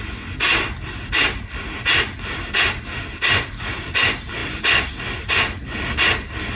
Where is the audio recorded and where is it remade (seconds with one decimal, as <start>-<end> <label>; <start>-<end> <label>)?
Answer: 0.0-6.6 recorded